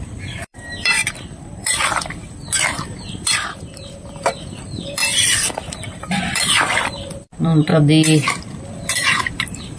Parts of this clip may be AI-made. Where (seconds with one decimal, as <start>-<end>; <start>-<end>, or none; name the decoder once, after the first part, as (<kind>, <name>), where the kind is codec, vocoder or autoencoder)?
0.0-7.7 (vocoder, BigVGAN v2); 9.3-9.8